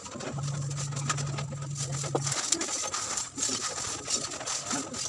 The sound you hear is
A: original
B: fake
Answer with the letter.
A